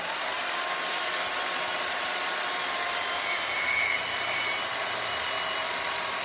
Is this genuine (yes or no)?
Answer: yes